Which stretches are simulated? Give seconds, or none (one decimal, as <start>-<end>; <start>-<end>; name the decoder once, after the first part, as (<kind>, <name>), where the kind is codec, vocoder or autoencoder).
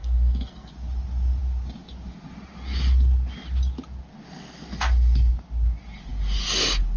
0.0-0.7 (codec, SNAC)